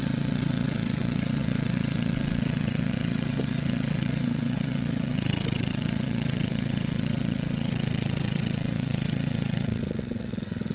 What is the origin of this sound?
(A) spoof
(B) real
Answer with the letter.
A